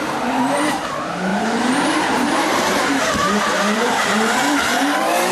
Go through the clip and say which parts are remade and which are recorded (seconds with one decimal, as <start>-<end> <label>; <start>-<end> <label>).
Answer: 0.0-5.3 remade